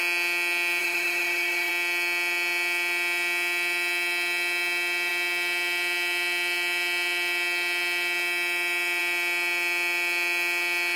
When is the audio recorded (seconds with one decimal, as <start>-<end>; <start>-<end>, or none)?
0.0-0.8; 1.7-11.0